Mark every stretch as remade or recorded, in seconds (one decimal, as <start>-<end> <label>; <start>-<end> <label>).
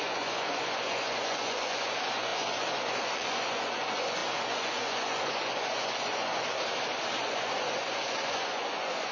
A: 0.0-6.3 remade; 6.3-7.2 recorded; 7.2-9.1 remade